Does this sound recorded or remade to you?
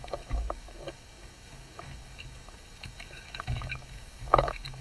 remade